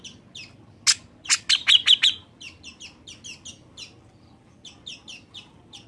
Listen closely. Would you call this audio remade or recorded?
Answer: recorded